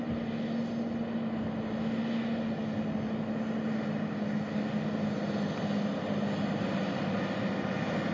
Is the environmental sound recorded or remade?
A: recorded